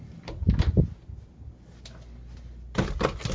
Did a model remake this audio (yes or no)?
no